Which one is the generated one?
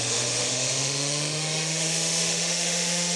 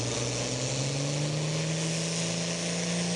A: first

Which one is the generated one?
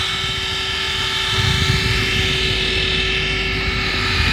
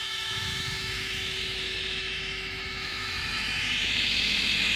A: second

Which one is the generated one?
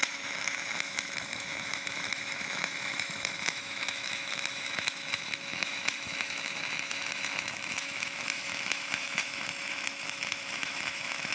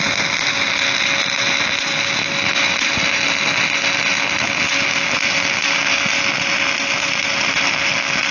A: first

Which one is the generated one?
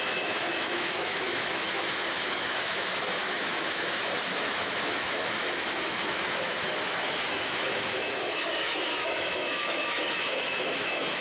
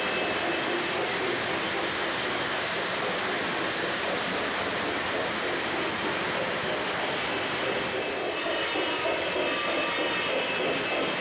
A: first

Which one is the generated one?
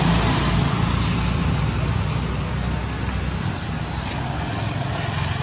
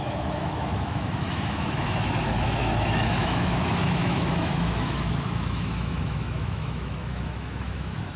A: second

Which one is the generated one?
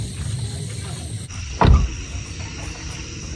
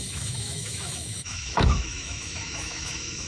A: second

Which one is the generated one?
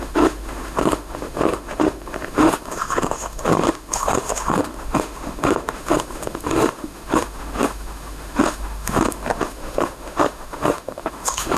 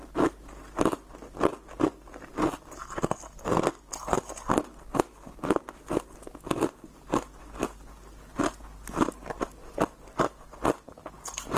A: first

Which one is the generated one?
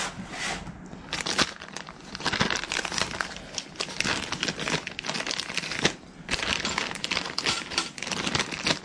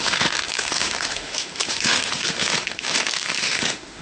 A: second